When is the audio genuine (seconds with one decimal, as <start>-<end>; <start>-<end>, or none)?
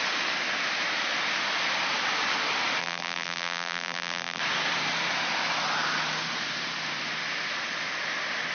0.0-2.8; 4.4-8.5